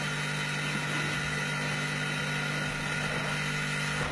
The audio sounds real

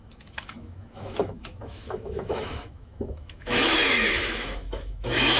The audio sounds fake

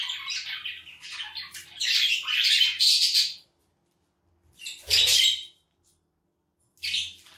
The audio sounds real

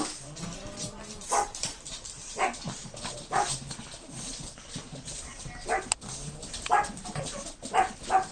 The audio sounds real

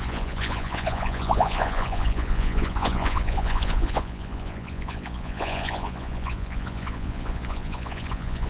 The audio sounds fake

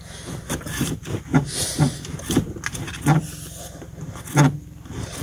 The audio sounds real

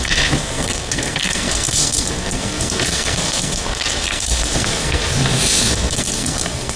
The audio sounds fake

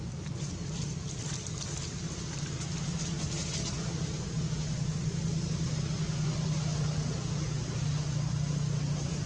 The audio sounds real